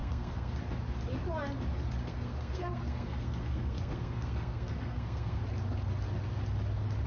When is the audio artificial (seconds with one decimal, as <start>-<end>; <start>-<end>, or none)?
0.0-0.6; 2.0-5.4